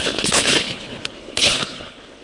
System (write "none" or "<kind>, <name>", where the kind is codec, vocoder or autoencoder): codec, HILCodec